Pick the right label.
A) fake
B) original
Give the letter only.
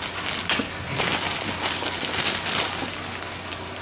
B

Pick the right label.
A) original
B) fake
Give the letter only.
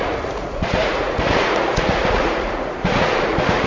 B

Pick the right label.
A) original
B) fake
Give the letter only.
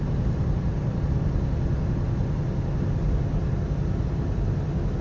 A